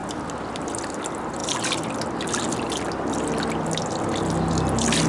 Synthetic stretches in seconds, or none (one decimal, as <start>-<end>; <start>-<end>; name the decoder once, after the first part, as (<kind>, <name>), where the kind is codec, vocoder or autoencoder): none